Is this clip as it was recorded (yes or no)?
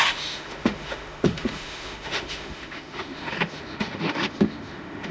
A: no